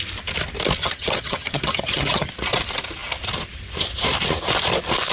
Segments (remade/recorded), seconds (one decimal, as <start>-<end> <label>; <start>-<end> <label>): 0.0-0.8 recorded; 0.8-2.3 remade; 2.3-5.1 recorded